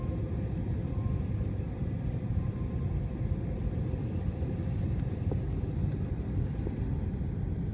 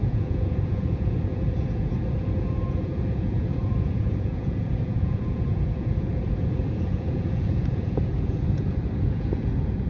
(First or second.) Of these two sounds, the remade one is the second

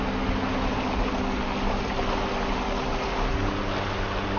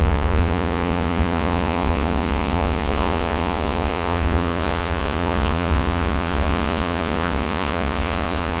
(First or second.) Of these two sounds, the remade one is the second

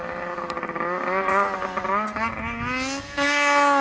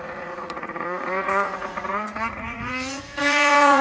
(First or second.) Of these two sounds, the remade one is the second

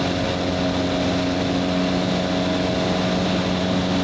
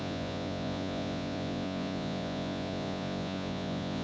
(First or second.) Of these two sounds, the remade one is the second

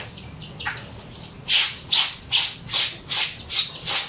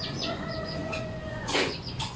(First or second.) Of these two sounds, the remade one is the second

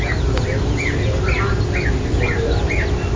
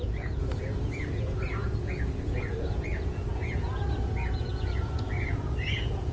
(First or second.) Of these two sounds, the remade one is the second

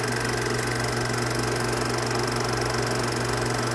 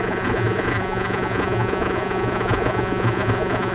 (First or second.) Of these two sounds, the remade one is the second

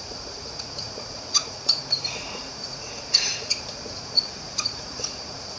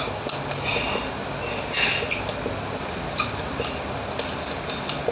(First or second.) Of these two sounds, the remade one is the first